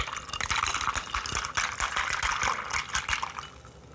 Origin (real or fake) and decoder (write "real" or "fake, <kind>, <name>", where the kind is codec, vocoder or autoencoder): real